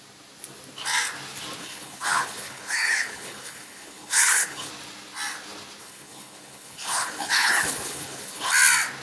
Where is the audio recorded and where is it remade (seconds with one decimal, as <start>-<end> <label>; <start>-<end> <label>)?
0.0-1.6 recorded; 1.6-4.7 remade; 4.7-5.8 recorded; 5.8-8.5 remade; 8.5-9.0 recorded